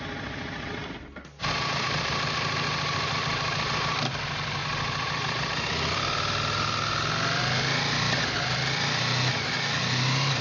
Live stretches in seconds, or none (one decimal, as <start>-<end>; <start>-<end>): 0.0-10.4